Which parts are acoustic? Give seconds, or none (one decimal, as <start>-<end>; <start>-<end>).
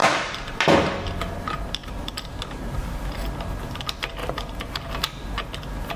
0.6-1.8; 2.3-4.2; 4.9-6.0